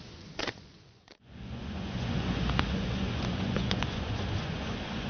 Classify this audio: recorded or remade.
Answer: remade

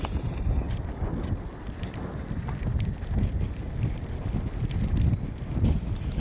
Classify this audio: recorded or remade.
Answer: recorded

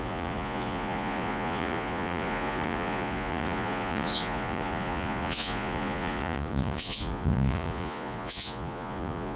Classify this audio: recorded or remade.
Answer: remade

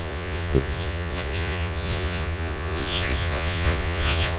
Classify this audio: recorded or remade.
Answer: remade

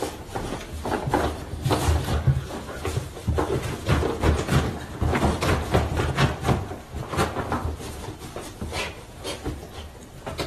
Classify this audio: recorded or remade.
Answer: recorded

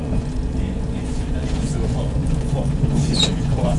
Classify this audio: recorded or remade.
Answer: remade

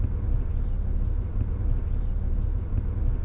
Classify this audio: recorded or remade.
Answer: recorded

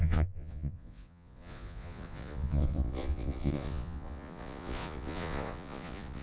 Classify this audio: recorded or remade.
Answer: remade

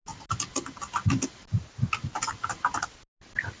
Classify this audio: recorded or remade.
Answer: recorded